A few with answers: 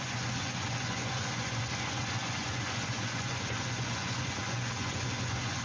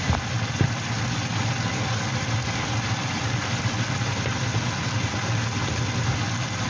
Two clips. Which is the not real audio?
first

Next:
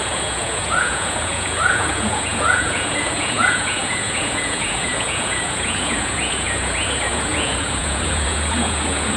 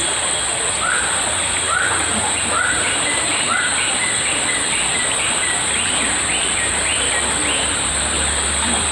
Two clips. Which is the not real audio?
first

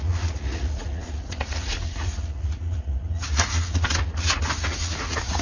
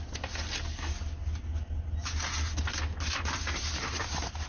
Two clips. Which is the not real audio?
first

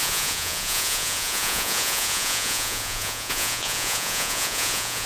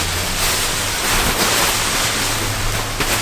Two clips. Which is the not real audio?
first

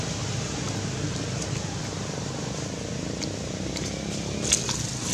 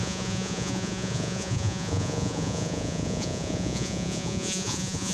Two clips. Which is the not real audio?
second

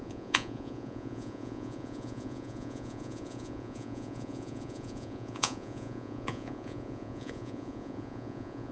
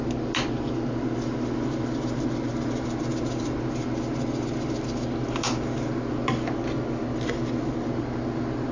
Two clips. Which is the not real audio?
first